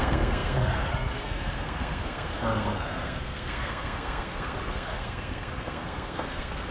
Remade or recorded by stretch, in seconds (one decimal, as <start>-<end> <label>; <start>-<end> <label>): 0.0-6.7 remade